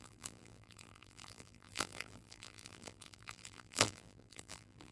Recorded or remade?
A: remade